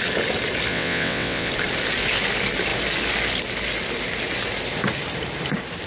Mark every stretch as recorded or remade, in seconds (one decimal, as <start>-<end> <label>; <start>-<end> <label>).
0.0-0.7 recorded; 0.7-1.5 remade; 1.5-5.9 recorded